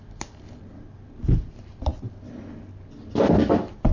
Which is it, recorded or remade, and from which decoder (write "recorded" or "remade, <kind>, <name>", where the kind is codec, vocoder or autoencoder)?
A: recorded